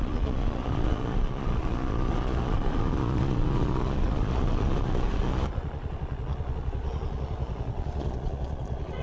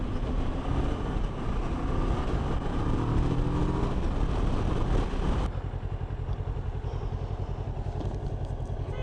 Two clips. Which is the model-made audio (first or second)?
first